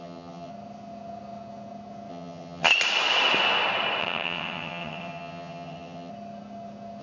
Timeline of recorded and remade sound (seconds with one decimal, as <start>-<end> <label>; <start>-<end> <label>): 0.0-0.5 remade; 0.5-2.1 recorded; 2.1-2.7 remade; 2.7-4.0 recorded; 4.0-6.1 remade; 6.1-7.0 recorded